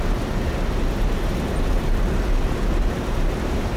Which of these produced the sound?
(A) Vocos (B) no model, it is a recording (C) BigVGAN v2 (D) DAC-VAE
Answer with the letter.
B